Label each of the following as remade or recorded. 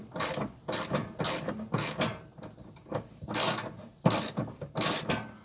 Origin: recorded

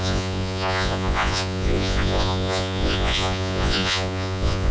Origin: remade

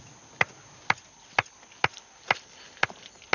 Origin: recorded